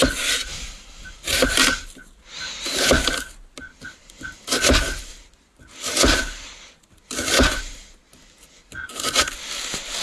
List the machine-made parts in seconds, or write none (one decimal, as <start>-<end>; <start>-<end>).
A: none

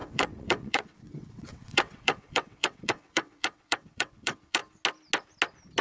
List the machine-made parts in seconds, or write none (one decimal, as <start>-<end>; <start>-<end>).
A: 0.0-4.6

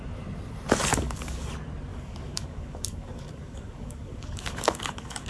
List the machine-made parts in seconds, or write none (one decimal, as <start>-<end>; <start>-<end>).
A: 0.9-1.5; 1.9-5.3

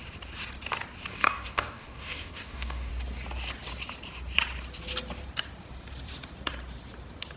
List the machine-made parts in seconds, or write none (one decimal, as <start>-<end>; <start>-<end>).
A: 1.1-2.9

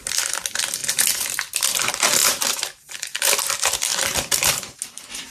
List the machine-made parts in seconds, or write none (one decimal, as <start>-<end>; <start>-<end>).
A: 2.2-3.4; 3.9-4.8

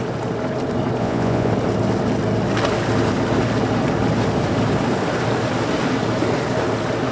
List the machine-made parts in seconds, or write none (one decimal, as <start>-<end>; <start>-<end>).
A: 1.0-1.5

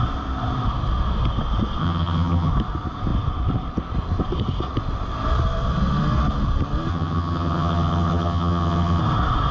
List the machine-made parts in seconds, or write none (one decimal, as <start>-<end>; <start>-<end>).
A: 1.8-2.5; 6.9-9.0

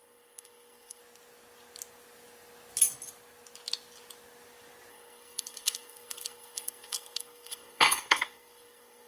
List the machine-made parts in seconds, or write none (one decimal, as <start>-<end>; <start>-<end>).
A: 0.0-1.0; 4.9-9.1